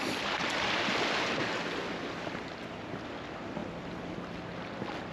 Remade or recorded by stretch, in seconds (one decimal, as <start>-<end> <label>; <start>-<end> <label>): 0.0-5.1 recorded